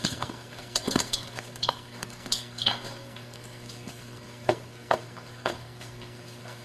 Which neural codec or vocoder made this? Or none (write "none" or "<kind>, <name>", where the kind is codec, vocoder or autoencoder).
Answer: codec, SNAC